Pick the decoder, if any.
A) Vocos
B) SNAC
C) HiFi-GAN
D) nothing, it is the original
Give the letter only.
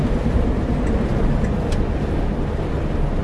D